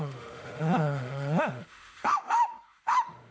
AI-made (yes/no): yes